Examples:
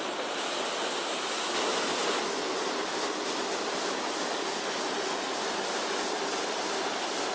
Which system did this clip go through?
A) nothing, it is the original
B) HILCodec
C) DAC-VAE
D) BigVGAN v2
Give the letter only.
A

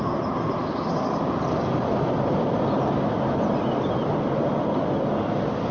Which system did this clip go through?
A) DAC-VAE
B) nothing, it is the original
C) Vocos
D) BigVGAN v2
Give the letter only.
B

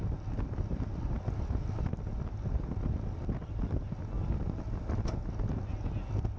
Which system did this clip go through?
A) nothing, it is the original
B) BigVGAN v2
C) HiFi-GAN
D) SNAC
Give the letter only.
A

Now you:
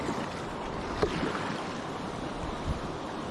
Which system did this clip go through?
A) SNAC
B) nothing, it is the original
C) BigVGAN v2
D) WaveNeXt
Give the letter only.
B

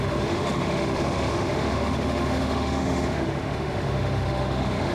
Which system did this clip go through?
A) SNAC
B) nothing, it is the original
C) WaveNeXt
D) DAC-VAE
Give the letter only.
D